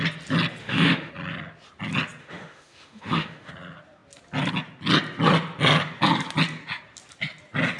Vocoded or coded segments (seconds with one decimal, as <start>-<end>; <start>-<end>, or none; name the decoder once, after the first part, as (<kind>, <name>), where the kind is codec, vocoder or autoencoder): 0.6-1.1 (autoencoder, DAC-VAE); 2.2-3.5